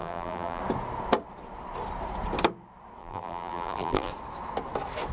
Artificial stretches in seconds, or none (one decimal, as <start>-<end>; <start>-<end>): 0.0-0.6; 3.0-4.1